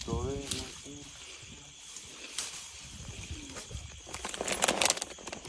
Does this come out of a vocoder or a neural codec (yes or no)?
no